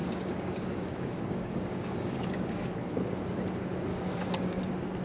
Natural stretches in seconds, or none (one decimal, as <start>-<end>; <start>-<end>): 2.7-3.9; 4.6-5.0